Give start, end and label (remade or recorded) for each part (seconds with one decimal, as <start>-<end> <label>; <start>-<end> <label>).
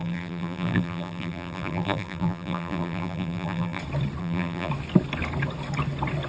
0.0-3.8 remade; 3.8-4.2 recorded; 4.2-4.7 remade; 4.7-6.3 recorded